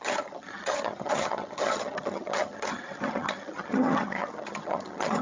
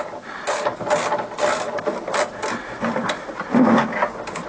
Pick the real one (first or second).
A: second